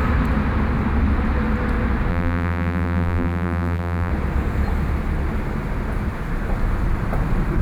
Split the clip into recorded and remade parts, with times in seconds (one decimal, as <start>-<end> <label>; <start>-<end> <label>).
0.0-2.1 recorded; 2.1-4.1 remade; 4.1-7.6 recorded